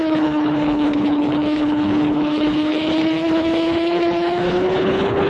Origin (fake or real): fake